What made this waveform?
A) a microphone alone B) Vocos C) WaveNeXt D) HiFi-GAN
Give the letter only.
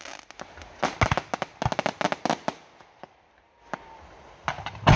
A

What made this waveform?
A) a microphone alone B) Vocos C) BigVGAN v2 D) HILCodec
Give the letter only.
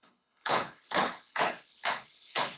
D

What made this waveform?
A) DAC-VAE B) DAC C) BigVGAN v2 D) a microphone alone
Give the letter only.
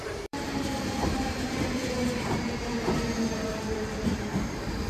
C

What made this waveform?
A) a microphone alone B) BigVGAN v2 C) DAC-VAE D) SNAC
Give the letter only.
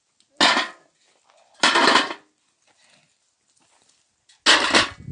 A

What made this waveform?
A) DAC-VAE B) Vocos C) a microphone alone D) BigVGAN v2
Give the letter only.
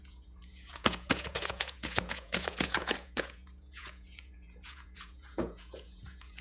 B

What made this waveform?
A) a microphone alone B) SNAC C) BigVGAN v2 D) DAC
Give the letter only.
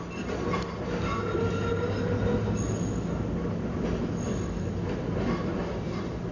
A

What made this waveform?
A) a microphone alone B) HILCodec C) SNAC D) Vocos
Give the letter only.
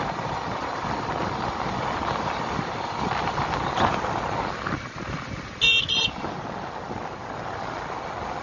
A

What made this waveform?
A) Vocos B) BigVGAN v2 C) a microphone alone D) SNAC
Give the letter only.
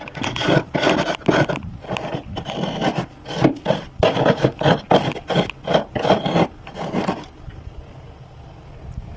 C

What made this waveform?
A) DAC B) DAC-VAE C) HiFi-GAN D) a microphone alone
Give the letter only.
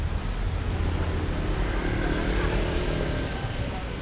D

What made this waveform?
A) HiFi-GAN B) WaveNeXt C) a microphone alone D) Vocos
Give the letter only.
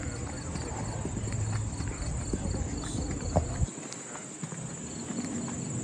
C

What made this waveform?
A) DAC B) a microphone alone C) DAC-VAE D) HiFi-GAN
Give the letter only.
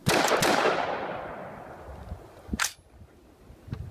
B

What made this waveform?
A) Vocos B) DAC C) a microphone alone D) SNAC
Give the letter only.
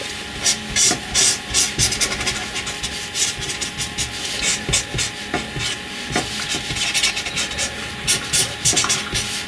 C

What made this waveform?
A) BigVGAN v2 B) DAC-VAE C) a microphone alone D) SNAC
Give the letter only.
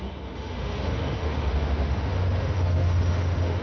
B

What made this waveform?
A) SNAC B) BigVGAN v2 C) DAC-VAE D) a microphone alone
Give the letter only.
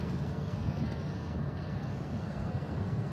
A